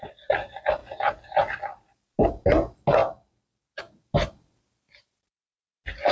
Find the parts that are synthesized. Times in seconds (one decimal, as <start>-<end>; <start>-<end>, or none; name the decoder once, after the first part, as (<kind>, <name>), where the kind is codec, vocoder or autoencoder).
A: none